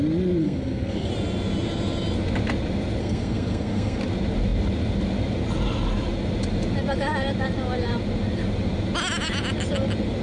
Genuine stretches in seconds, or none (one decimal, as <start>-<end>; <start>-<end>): 0.0-0.4; 1.1-3.0; 4.0-10.2